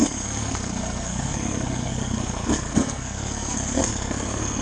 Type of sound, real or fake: fake